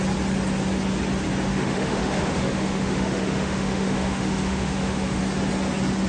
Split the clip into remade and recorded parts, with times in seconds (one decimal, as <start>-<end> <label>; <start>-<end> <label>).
0.0-1.5 recorded; 1.5-5.2 remade; 5.2-6.1 recorded